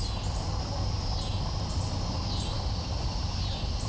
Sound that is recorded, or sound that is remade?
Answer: recorded